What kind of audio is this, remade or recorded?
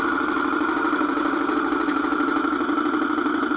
recorded